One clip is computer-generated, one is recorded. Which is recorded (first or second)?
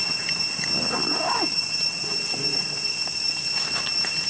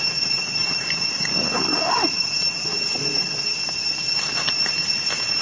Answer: first